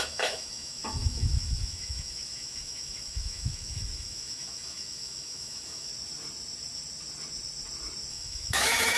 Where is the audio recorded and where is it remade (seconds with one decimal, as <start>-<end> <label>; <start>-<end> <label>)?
0.0-5.9 remade; 5.9-8.1 recorded; 8.1-9.0 remade